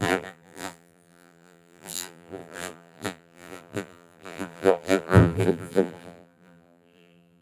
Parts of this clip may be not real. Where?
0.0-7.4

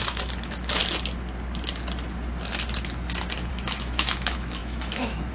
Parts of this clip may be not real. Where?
0.0-0.8; 3.5-5.3

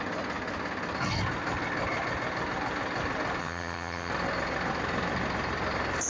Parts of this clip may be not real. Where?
3.4-4.1